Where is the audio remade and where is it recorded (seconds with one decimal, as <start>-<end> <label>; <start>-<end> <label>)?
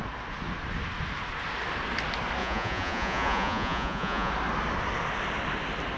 0.0-2.4 recorded; 2.4-4.3 remade; 4.3-6.0 recorded